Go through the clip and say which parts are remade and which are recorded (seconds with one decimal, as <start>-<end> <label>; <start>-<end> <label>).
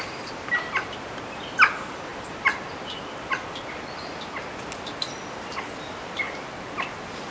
0.0-7.3 recorded